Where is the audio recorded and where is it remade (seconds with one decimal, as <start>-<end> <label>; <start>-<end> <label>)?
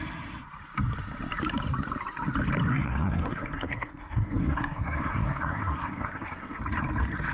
0.0-2.7 recorded; 2.7-6.6 remade; 6.6-7.3 recorded